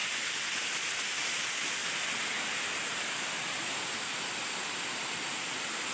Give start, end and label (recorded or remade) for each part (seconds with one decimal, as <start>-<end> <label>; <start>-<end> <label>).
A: 0.0-5.9 recorded

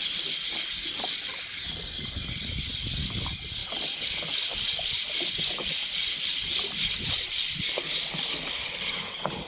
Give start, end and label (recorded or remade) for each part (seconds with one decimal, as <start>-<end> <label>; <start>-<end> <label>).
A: 0.0-9.5 recorded

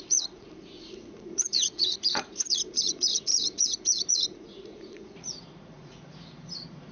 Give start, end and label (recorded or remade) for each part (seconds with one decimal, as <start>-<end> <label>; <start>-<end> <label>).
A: 0.0-6.9 remade

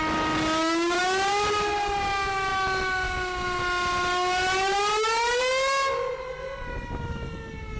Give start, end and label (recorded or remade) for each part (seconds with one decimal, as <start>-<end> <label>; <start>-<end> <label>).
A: 0.0-7.8 recorded